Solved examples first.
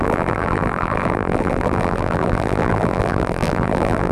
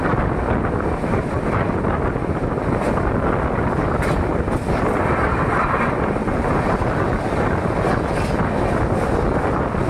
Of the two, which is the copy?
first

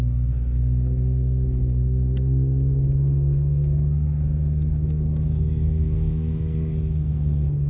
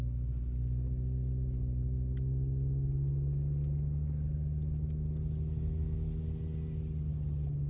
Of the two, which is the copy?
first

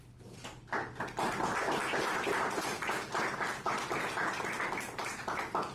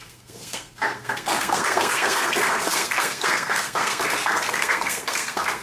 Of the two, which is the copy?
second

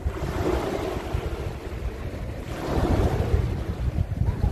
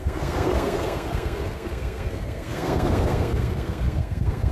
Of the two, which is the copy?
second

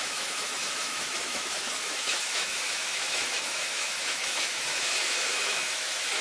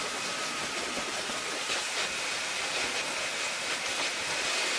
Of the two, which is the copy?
first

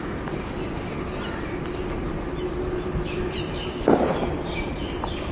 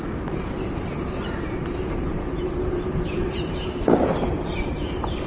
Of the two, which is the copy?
second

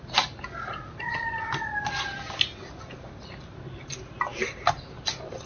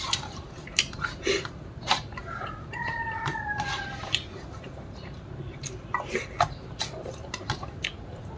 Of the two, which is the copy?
second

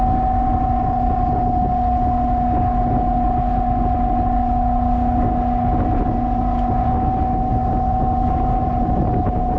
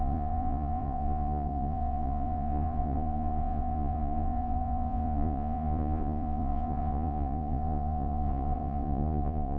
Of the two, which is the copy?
second